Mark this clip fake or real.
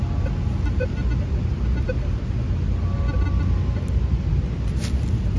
real